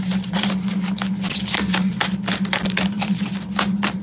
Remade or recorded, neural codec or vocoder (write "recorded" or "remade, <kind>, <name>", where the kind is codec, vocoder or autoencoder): recorded